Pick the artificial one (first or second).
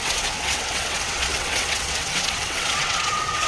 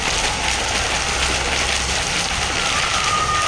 first